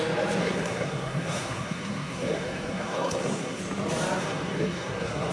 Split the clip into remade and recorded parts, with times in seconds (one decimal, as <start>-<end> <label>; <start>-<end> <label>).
0.0-0.4 recorded; 0.4-3.6 remade; 3.6-4.2 recorded; 4.2-5.3 remade